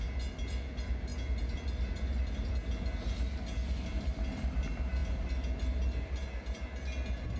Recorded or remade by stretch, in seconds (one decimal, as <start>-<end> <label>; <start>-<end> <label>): 0.0-7.4 recorded

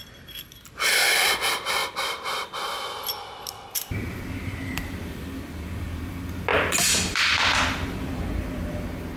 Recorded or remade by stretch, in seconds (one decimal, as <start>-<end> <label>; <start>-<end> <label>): 0.0-1.8 recorded; 1.8-5.4 remade; 5.4-6.5 recorded; 6.5-8.2 remade; 8.2-9.2 recorded

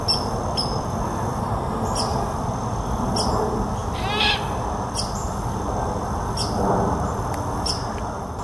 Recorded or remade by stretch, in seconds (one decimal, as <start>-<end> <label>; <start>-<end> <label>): 0.0-2.1 recorded; 2.1-3.1 remade; 3.1-8.4 recorded

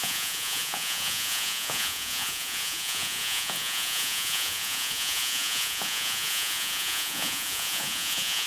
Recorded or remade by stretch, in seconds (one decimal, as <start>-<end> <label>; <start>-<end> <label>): 0.0-8.5 remade

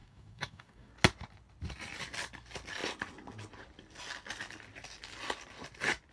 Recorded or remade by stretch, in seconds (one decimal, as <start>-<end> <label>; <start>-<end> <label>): 0.0-0.9 remade; 0.9-6.1 recorded

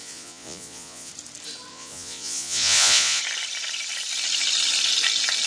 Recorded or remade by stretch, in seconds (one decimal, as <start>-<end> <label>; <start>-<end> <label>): 0.0-1.1 remade; 1.1-1.7 recorded; 1.7-3.2 remade; 3.2-5.5 recorded